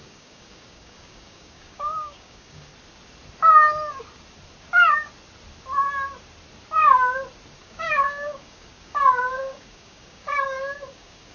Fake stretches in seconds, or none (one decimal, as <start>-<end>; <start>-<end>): 0.0-2.7; 7.6-11.3